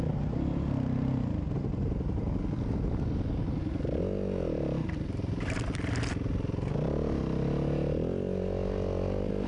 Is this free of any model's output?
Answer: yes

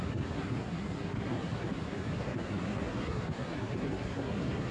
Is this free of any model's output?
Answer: no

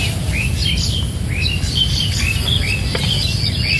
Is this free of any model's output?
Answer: yes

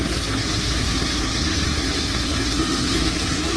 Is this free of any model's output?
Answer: no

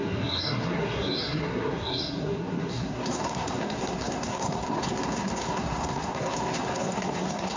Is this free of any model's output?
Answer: no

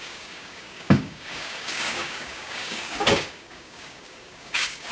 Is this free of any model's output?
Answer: no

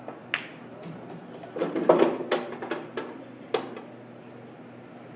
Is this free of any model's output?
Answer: yes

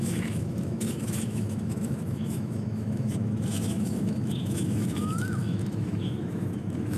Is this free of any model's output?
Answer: no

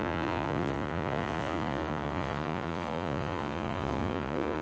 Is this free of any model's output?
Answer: no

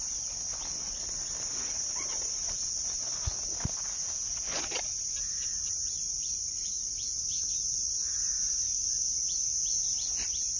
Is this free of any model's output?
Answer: yes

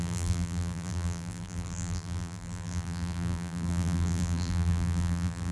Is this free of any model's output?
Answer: no